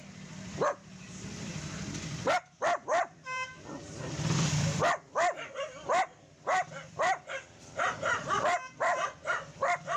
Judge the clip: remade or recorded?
remade